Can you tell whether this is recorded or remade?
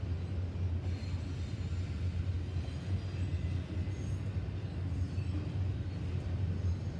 recorded